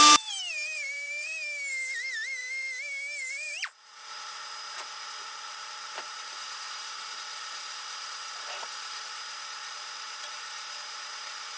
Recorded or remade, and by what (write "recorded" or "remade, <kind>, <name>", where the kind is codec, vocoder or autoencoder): remade, vocoder, BigVGAN v2